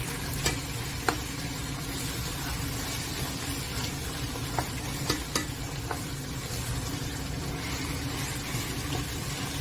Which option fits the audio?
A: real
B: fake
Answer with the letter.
A